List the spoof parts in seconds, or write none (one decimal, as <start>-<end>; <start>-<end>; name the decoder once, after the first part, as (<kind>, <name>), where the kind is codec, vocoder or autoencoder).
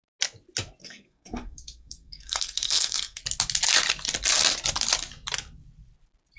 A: 0.8-3.2 (codec, SNAC)